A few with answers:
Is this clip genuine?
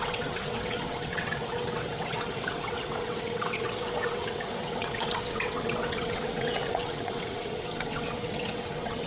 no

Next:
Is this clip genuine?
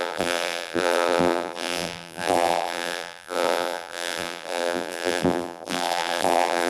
no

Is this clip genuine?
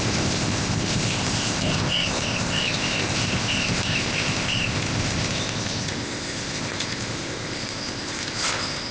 no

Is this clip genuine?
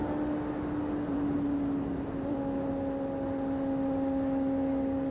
yes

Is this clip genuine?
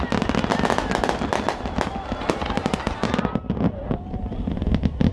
yes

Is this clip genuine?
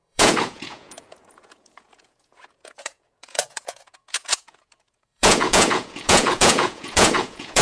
no